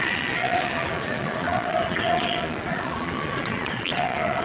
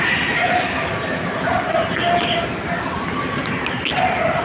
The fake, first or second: first